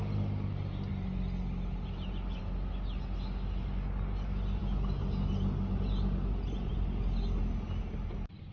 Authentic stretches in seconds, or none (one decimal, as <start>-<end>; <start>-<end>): 0.0-8.5